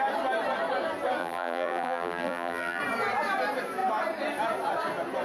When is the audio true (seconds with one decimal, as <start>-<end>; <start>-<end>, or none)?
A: 0.0-1.2; 2.8-5.2